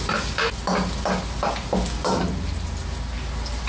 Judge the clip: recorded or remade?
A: recorded